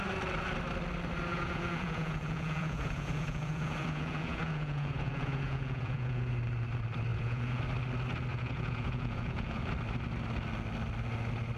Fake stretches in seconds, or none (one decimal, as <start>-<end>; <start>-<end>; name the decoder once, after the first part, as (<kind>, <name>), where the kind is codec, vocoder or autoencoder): 1.3-6.3 (vocoder, Vocos); 7.1-7.6; 8.3-9.7